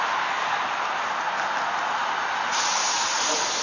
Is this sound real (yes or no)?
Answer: yes